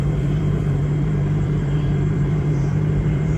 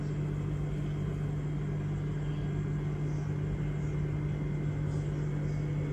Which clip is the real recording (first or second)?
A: second